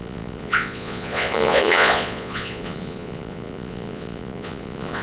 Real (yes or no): no